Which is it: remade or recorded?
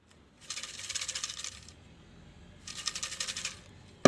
recorded